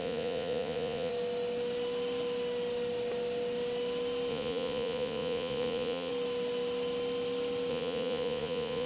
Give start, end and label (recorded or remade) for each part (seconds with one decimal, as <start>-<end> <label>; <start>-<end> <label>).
0.0-1.1 remade; 1.1-4.3 recorded; 4.3-6.1 remade; 6.1-7.7 recorded; 7.7-8.9 remade